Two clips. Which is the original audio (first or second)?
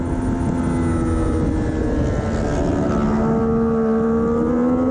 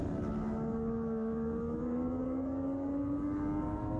first